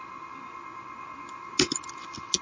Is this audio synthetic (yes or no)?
no